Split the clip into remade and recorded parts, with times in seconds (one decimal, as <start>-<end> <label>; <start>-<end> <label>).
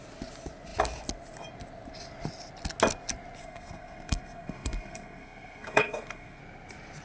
0.0-3.4 recorded; 3.4-6.4 remade; 6.4-7.0 recorded